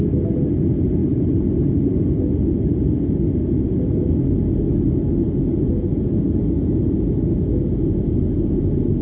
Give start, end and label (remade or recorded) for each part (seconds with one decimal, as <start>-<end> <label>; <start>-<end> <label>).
0.0-9.0 recorded